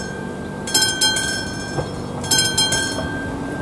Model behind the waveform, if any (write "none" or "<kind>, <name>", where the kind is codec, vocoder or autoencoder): none